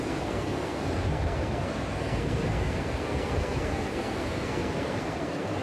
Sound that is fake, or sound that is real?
fake